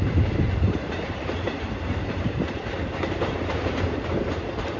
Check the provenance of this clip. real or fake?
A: fake